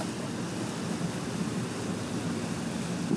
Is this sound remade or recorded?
recorded